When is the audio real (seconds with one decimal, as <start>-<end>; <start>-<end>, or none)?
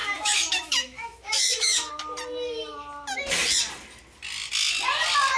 1.9-5.4